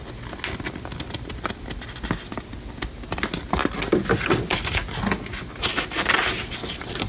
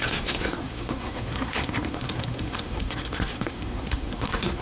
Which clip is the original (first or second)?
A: first